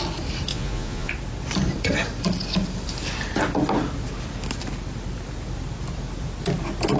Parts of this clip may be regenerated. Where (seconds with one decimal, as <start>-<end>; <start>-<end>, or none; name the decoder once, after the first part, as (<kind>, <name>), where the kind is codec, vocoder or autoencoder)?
0.5-1.1 (vocoder, Vocos)